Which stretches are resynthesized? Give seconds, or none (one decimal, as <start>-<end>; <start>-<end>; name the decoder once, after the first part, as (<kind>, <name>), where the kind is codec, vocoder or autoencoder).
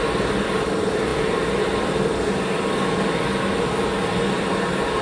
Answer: none